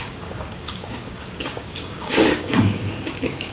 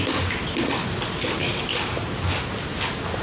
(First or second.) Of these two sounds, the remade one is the first